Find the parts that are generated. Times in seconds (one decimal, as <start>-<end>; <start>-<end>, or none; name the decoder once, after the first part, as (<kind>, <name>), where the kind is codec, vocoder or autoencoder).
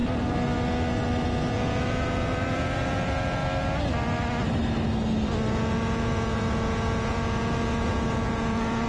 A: 1.5-3.4 (vocoder, Vocos); 5.5-8.9